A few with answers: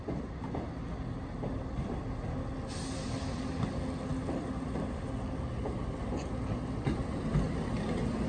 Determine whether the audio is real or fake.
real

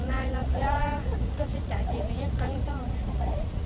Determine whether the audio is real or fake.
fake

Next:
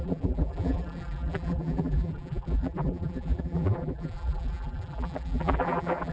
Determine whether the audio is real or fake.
fake